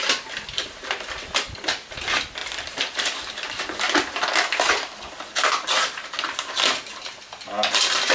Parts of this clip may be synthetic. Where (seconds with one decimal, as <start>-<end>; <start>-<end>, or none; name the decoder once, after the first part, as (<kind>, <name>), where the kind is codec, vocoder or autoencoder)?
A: none